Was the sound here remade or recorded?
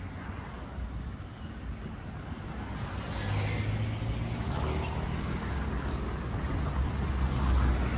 recorded